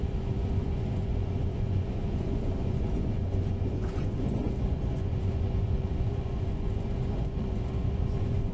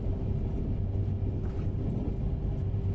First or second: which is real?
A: second